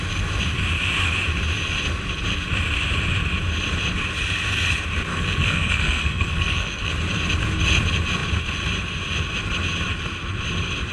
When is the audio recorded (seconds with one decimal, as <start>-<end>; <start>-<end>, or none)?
0.0-5.1; 6.9-10.9